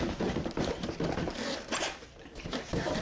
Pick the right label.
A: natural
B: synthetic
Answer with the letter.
B